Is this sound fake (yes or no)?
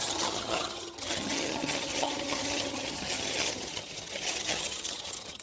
yes